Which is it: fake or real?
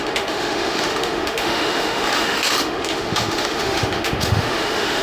fake